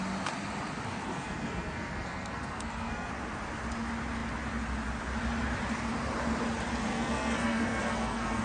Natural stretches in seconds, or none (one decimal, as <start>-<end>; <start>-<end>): 0.0-1.1; 3.1-6.9